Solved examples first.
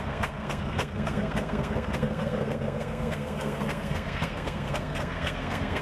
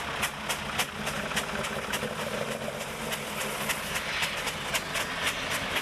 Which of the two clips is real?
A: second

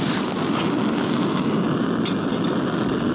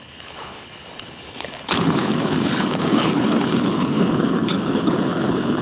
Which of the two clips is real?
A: first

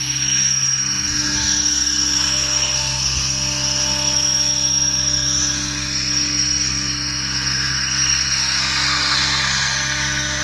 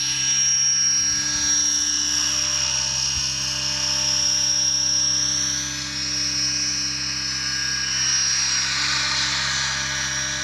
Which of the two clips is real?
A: second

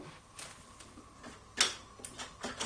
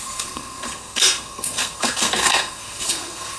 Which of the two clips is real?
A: first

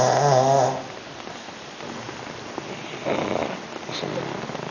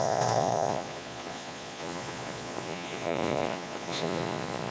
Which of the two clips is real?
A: first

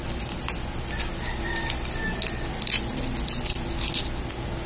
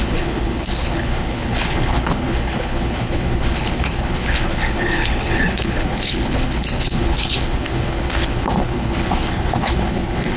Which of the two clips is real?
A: first